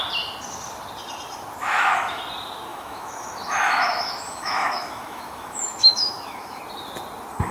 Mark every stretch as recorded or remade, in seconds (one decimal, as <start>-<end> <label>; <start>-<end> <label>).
0.0-1.6 recorded; 1.6-2.2 remade; 2.2-2.7 recorded; 2.7-6.6 remade; 6.6-7.5 recorded